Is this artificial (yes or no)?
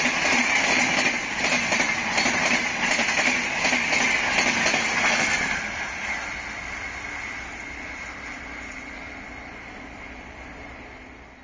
no